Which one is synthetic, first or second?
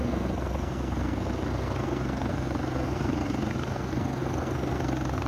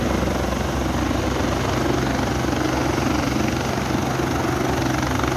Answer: first